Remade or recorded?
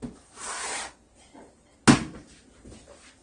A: recorded